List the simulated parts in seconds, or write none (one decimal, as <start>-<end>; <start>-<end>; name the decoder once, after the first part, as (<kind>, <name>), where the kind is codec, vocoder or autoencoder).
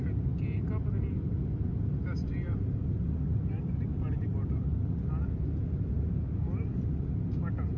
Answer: none